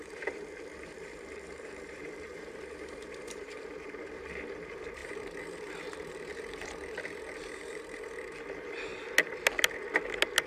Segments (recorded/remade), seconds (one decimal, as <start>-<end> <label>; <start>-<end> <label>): 0.0-8.9 remade; 8.9-10.5 recorded

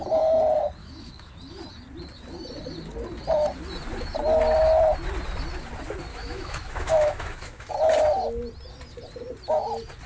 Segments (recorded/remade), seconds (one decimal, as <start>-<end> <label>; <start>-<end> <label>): 0.0-0.8 recorded; 0.8-1.3 remade; 1.3-6.1 recorded; 6.1-7.7 remade; 7.7-10.1 recorded

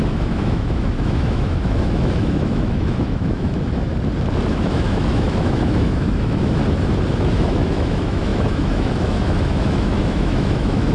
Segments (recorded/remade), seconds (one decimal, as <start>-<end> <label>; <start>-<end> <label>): 0.0-3.9 remade; 3.9-4.5 recorded; 4.5-6.6 remade; 6.6-7.1 recorded; 7.1-10.9 remade